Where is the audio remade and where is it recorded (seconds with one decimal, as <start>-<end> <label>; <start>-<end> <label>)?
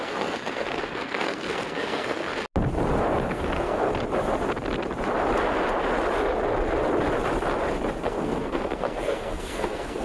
0.0-2.3 remade; 2.3-3.3 recorded; 3.3-3.9 remade; 3.9-8.0 recorded; 8.0-10.0 remade